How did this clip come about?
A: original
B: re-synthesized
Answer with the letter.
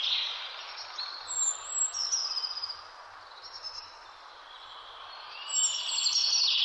A